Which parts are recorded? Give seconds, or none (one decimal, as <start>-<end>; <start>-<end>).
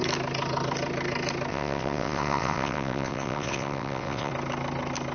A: 0.0-1.5; 4.3-5.1